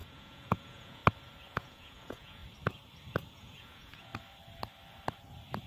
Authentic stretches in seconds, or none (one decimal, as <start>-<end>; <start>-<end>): 1.0-1.5; 2.4-3.3; 4.1-5.7